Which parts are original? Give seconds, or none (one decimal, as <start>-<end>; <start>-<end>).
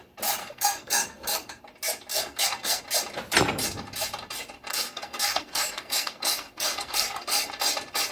0.0-0.4; 1.6-2.1; 2.8-4.7; 7.5-8.1